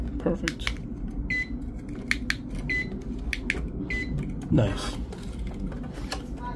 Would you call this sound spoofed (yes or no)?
no